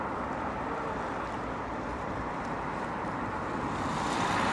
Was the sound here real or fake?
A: fake